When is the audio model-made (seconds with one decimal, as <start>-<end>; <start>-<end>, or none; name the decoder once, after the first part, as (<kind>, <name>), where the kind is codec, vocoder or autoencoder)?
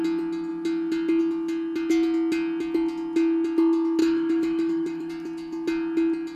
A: 4.0-5.1 (autoencoder, DAC-VAE)